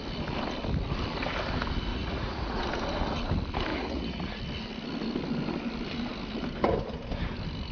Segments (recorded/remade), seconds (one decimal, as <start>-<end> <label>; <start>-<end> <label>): 0.0-1.9 recorded; 1.9-2.6 remade; 2.6-3.7 recorded; 3.7-4.4 remade; 4.4-7.7 recorded